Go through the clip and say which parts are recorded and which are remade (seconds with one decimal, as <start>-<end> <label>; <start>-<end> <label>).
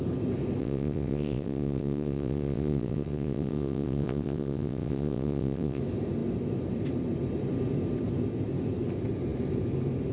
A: 0.0-0.6 recorded; 0.6-5.8 remade; 5.8-10.1 recorded